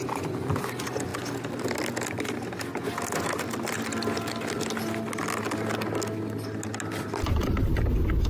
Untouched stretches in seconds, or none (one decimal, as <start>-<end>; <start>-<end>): 0.0-8.3